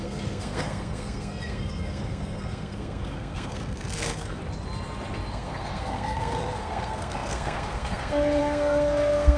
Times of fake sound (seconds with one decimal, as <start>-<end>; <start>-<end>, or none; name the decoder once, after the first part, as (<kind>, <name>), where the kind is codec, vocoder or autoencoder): 0.0-4.4 (codec, SNAC); 5.3-9.4